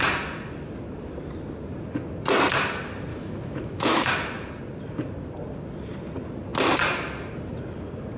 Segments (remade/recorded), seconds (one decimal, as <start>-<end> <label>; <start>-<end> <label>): 0.0-3.1 recorded; 3.1-4.1 remade; 4.1-8.2 recorded